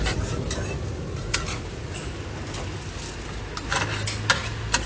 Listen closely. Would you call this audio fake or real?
real